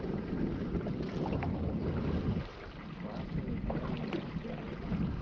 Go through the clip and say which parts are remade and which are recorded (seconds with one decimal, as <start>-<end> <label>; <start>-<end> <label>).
0.0-5.2 recorded